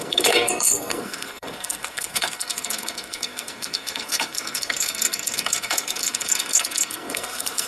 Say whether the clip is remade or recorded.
remade